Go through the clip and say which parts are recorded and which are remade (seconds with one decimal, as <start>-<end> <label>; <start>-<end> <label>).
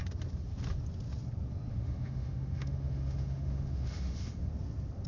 0.0-1.7 recorded; 1.7-4.5 remade; 4.5-5.1 recorded